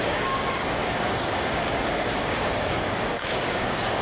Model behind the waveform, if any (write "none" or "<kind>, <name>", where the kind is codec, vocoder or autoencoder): codec, DAC